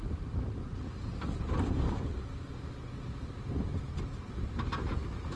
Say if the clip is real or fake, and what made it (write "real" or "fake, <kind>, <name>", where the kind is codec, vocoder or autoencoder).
real